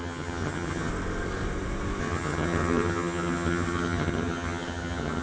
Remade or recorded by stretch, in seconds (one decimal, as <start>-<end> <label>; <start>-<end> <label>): 0.0-0.9 remade; 0.9-2.0 recorded; 2.0-5.2 remade